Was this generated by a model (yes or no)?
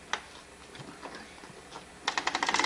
no